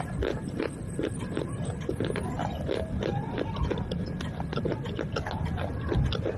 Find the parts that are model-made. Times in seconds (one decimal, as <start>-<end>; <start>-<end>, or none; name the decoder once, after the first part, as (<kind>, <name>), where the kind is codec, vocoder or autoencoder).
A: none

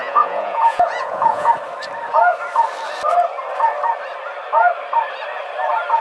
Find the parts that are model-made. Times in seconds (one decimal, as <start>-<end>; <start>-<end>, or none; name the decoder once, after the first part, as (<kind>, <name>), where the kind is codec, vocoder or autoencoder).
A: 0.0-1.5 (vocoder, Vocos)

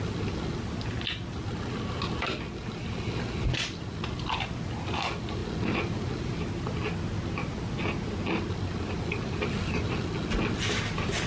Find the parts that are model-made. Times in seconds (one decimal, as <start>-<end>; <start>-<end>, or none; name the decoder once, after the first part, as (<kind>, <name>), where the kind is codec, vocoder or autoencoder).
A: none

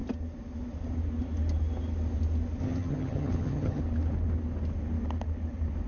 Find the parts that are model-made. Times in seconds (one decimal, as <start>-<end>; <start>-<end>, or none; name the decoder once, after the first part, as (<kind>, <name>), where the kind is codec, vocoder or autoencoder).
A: 2.6-3.8 (vocoder, HiFi-GAN)

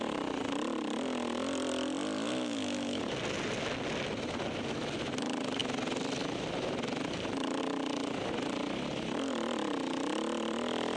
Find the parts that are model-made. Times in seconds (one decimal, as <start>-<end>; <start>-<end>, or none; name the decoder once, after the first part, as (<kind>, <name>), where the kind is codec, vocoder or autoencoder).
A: 2.3-3.0 (autoencoder, DAC-VAE)